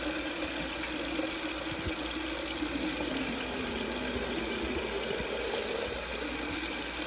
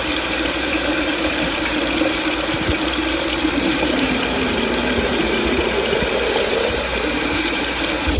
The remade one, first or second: second